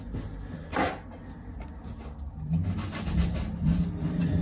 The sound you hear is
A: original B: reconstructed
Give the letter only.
A